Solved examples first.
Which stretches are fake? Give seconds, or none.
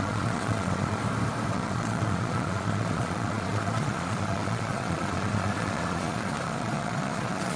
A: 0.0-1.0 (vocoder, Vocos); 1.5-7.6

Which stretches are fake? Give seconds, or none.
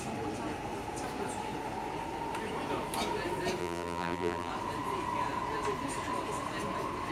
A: 3.6-4.5 (vocoder, BigVGAN v2)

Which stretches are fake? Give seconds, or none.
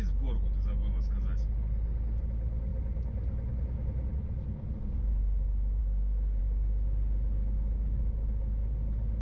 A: 5.8-6.4 (codec, SNAC)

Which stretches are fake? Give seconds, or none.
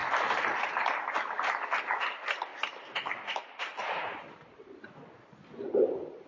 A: 0.0-0.7 (vocoder, BigVGAN v2)